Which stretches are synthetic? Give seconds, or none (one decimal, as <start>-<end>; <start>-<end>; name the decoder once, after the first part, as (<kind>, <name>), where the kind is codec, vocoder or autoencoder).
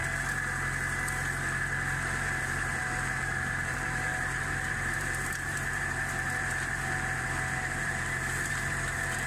2.4-9.3 (vocoder, BigVGAN v2)